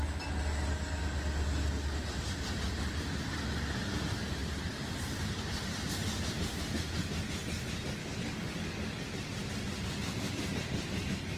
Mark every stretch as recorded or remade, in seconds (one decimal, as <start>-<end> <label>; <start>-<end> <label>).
0.0-8.0 recorded; 8.0-9.0 remade; 9.0-11.4 recorded